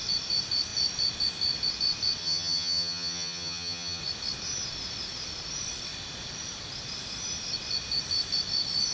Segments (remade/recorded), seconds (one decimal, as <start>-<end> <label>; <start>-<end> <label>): 0.0-2.2 recorded; 2.2-4.0 remade; 4.0-8.9 recorded